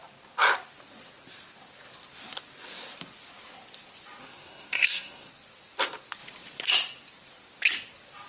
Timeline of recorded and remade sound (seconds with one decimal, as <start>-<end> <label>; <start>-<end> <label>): 0.0-4.2 recorded; 4.2-5.3 remade; 5.3-8.3 recorded